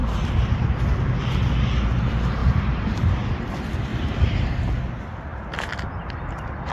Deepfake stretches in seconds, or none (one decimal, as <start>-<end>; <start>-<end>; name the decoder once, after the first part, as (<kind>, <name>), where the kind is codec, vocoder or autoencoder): 0.0-1.4 (vocoder, BigVGAN v2); 2.4-3.1; 3.9-4.6